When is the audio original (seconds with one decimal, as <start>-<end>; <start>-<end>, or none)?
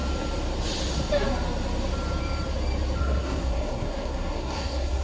0.0-3.0